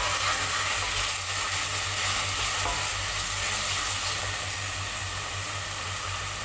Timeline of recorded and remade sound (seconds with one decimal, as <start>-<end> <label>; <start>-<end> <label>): 0.0-6.4 recorded